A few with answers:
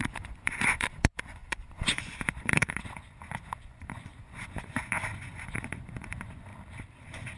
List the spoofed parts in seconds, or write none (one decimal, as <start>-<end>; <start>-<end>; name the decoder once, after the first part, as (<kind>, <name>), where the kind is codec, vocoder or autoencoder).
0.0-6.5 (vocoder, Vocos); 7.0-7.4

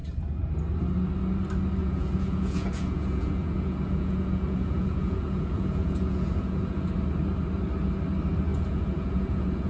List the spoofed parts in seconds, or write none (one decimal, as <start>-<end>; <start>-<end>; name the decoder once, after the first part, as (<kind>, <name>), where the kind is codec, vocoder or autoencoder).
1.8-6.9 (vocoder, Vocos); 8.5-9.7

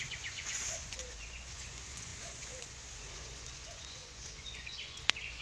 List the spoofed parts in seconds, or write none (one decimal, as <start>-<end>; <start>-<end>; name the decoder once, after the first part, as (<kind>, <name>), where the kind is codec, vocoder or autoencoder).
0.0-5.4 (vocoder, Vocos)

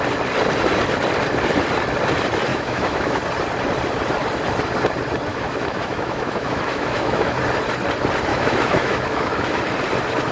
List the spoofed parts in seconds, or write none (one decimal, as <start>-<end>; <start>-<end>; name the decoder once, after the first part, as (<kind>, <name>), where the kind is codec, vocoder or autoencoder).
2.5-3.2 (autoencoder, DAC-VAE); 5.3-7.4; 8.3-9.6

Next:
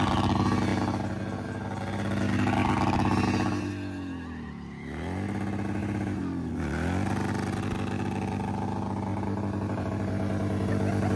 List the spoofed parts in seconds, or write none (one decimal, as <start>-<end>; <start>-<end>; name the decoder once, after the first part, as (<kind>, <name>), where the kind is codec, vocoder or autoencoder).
5.8-6.5 (vocoder, BigVGAN v2); 9.1-10.7

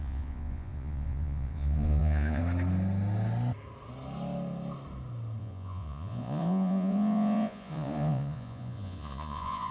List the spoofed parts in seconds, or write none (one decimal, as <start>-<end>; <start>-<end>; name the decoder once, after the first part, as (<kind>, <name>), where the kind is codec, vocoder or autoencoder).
0.0-2.4 (vocoder, Vocos); 5.4-9.7

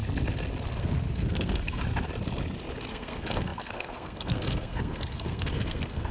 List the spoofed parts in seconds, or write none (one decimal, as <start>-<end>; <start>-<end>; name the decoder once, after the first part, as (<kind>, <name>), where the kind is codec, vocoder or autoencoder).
0.8-1.8 (codec, SNAC); 2.9-6.1

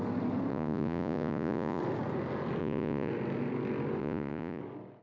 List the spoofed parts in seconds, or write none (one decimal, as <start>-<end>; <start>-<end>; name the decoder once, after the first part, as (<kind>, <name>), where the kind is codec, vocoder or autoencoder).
0.5-1.8 (vocoder, Vocos); 2.6-3.1; 4.0-4.6